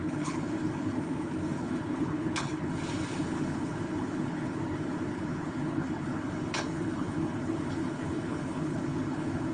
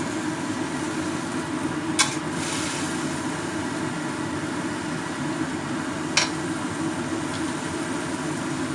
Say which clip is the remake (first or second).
first